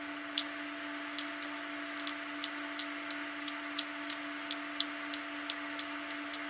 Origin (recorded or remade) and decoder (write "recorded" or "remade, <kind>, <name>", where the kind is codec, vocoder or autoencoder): recorded